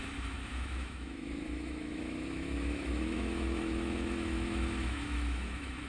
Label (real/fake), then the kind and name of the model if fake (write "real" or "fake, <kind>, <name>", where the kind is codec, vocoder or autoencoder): fake, autoencoder, DAC-VAE